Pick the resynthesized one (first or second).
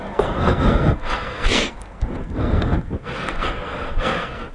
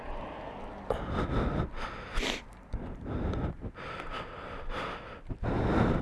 first